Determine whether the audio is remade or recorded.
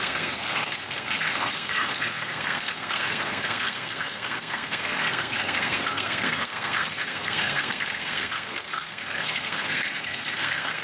remade